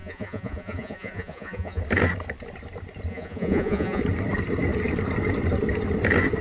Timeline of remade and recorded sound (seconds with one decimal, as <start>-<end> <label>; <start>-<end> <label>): 0.0-1.8 remade; 1.8-3.1 recorded; 3.1-4.0 remade; 4.0-6.4 recorded